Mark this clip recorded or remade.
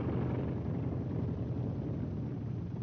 recorded